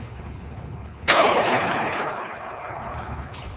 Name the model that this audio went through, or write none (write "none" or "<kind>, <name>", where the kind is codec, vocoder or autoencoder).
codec, HILCodec